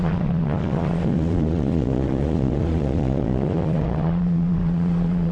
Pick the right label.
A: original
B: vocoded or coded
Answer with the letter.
B